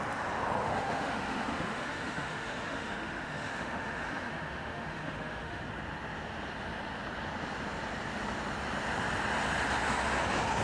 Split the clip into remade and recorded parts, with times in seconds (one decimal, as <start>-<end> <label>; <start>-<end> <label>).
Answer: 0.0-0.6 recorded; 0.6-5.6 remade; 5.6-10.6 recorded

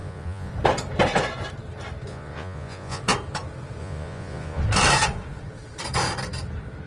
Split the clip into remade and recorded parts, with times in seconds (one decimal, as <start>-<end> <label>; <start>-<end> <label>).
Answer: 0.0-0.5 remade; 0.5-2.1 recorded; 2.1-3.0 remade; 3.0-3.8 recorded; 3.8-4.6 remade; 4.6-6.9 recorded

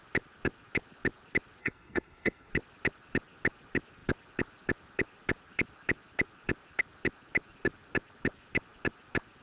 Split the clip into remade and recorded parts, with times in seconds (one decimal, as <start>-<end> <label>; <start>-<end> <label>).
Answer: 0.0-1.6 recorded; 1.6-2.5 remade; 2.5-9.4 recorded

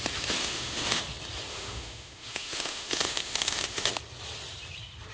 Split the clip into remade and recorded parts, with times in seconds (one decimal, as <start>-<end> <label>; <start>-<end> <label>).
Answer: 0.0-0.4 recorded; 0.4-1.0 remade; 1.0-1.5 recorded; 1.5-3.9 remade; 3.9-5.1 recorded

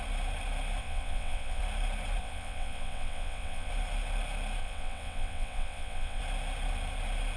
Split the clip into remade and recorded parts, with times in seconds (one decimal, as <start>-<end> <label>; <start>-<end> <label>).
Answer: 0.0-0.8 recorded; 0.8-1.6 remade; 1.6-2.2 recorded; 2.2-3.7 remade; 3.7-4.6 recorded; 4.6-6.2 remade; 6.2-7.4 recorded

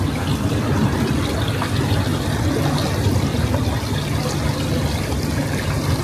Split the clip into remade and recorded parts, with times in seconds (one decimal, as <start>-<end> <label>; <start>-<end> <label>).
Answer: 0.0-6.0 recorded